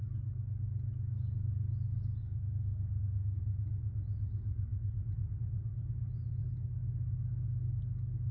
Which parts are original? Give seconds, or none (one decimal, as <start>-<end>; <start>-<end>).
0.0-2.2; 3.4-8.3